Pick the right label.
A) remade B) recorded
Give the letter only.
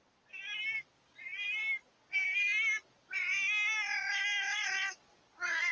B